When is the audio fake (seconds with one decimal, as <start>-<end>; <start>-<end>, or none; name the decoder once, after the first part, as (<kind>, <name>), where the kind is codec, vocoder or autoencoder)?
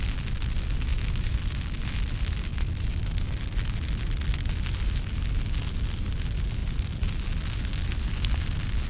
none